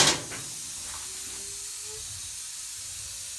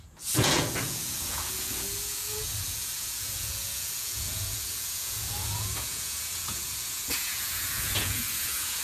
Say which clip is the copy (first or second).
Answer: second